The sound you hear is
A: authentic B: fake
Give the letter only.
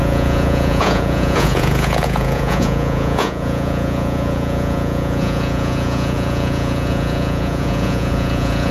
B